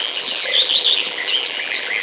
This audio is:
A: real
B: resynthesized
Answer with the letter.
B